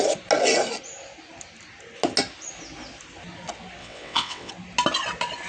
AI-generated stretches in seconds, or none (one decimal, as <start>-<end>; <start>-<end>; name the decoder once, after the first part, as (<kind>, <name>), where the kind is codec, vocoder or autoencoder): 3.8-4.5 (vocoder, WaveNeXt)